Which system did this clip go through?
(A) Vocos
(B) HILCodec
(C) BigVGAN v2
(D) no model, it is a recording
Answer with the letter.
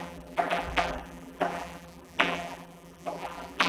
C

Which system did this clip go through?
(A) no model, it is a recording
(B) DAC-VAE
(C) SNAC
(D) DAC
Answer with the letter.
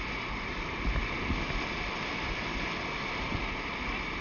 A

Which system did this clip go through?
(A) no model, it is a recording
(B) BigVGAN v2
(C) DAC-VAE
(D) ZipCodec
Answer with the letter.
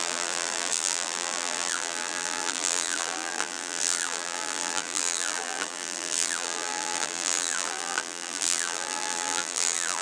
B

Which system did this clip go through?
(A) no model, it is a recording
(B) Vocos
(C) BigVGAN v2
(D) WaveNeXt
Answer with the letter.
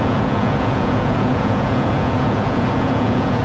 B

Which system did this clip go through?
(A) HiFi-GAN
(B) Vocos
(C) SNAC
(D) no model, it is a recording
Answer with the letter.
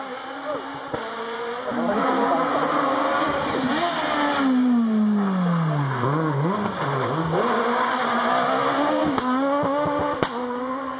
D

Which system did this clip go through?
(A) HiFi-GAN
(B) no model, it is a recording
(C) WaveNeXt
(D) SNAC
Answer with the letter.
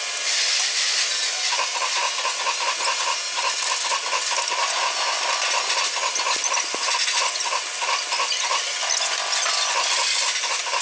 B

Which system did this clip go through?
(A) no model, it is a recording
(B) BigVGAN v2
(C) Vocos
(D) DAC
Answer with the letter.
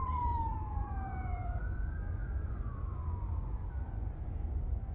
C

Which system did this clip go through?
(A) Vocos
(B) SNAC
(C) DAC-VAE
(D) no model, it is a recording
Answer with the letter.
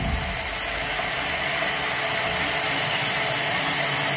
D